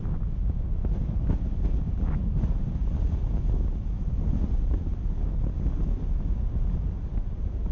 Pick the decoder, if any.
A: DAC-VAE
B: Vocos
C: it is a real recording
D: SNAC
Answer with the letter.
C